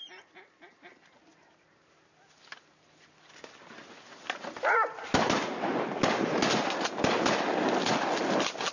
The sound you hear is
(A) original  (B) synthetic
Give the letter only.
A